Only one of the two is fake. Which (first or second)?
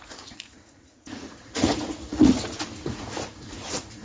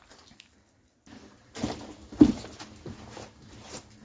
first